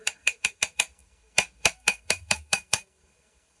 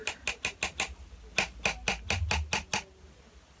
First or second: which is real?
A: second